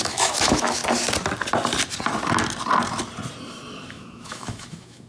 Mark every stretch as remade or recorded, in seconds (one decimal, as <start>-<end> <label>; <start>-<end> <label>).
0.0-0.8 remade; 0.8-3.9 recorded; 3.9-5.1 remade